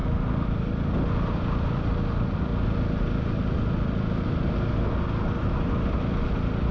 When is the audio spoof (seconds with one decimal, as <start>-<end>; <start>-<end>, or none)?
0.6-2.5; 5.2-6.7